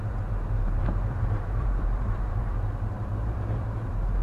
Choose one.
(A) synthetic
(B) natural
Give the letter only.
A